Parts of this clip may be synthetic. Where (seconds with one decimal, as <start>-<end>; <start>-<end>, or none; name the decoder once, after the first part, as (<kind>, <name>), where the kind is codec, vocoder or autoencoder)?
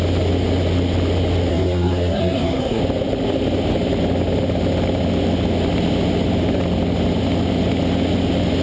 1.5-2.8 (codec, SNAC)